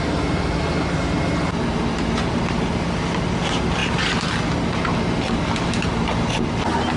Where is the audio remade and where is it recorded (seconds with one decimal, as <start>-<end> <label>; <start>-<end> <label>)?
0.0-7.0 recorded